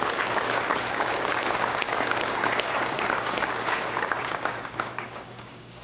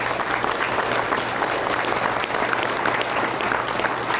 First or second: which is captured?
second